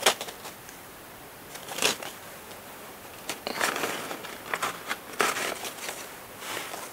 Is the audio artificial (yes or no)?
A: yes